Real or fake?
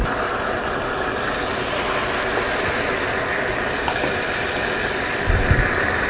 real